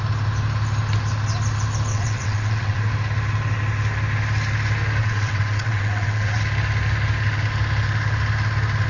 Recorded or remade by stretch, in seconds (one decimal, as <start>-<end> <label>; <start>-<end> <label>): 0.0-1.9 recorded; 1.9-2.9 remade; 2.9-5.0 recorded; 5.0-6.4 remade; 6.4-8.9 recorded